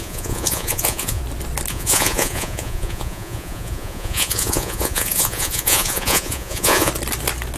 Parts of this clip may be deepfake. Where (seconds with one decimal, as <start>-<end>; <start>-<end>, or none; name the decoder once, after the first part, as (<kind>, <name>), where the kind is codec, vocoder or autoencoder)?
0.0-1.2 (vocoder, Vocos); 1.7-6.9